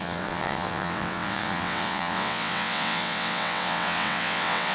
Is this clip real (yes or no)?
no